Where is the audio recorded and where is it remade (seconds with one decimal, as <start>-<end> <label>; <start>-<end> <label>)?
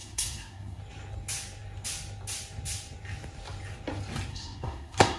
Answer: 0.0-0.8 remade; 0.8-4.3 recorded; 4.3-5.2 remade